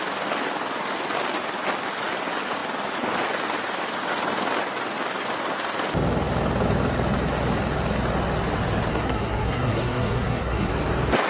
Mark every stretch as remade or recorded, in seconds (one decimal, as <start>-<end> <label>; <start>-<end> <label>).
0.0-8.9 recorded; 8.9-10.7 remade; 10.7-11.3 recorded